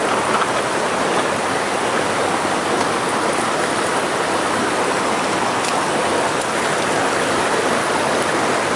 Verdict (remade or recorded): recorded